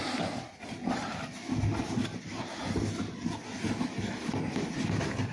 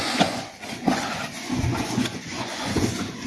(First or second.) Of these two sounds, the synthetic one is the second